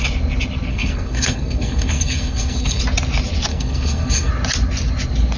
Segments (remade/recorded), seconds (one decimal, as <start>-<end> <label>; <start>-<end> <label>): 0.0-0.7 recorded; 0.7-2.8 remade; 2.8-3.5 recorded; 3.5-4.3 remade; 4.3-5.4 recorded